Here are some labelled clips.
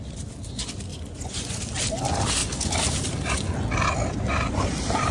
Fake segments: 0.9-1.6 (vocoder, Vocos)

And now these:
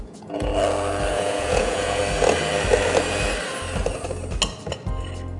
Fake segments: 0.0-0.5 (vocoder, Vocos); 1.1-2.0

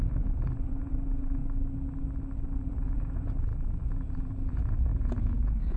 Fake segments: 0.0-1.4 (vocoder, Vocos); 2.7-3.5; 4.5-5.8